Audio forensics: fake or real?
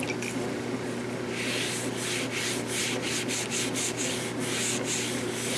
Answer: real